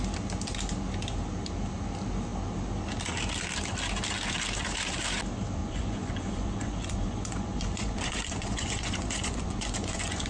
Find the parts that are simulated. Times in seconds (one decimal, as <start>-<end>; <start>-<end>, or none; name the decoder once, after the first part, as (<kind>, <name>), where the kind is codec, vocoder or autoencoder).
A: 5.6-10.3 (vocoder, Vocos)